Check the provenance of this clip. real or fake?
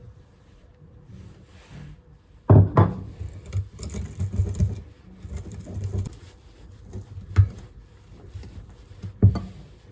real